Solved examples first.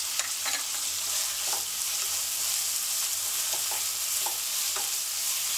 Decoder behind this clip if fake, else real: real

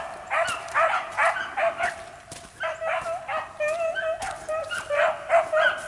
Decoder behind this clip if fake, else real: real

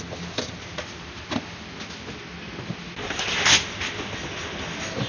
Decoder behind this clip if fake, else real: real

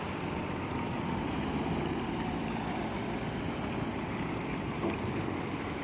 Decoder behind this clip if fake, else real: real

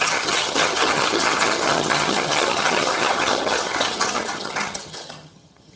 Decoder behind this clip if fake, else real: fake, vocoder, HiFi-GAN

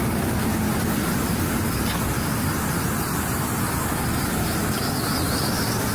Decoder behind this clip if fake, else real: real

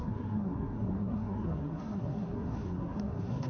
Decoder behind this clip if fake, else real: fake, codec, SNAC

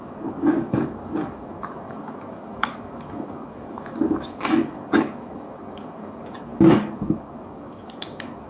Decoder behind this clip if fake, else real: fake, codec, DAC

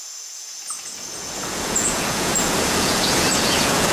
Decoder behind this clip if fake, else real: fake, vocoder, Vocos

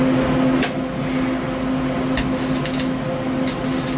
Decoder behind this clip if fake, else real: real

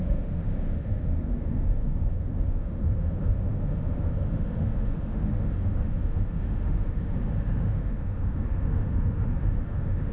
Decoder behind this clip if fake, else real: fake, autoencoder, DAC-VAE